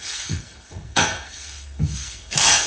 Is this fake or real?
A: fake